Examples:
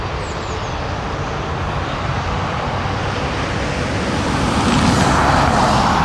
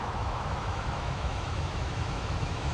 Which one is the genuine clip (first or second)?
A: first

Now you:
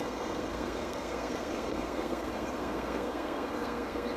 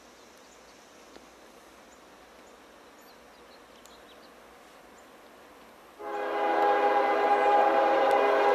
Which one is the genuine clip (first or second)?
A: second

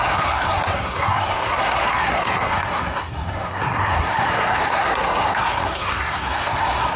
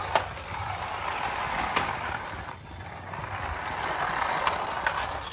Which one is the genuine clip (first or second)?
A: second